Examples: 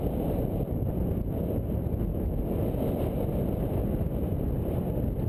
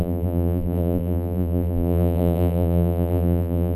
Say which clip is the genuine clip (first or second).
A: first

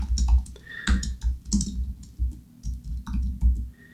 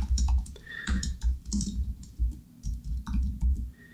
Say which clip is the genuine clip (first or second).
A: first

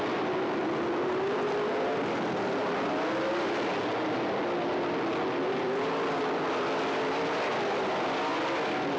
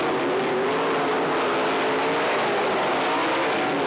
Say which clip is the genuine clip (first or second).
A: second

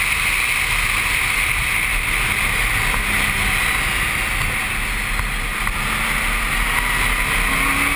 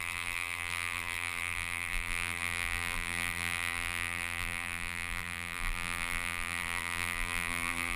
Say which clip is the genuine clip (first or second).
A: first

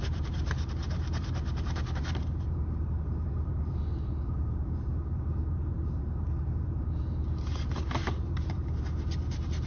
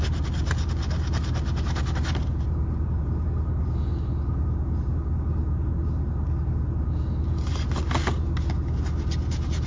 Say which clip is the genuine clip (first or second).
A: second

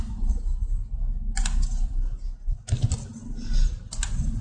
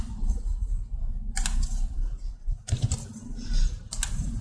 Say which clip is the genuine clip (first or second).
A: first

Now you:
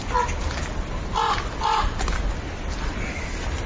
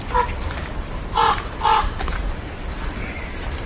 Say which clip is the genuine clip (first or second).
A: first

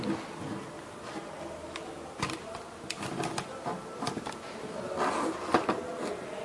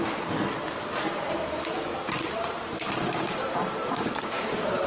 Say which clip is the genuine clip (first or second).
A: first